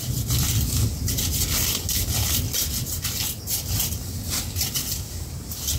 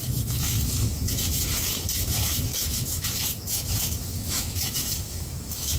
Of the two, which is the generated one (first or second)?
second